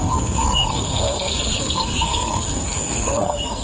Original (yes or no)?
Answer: no